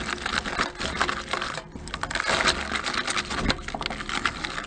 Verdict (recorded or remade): recorded